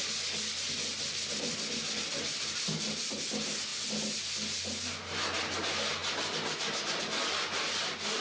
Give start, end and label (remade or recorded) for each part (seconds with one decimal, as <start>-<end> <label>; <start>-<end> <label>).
0.0-8.2 recorded